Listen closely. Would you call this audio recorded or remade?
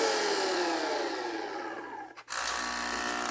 recorded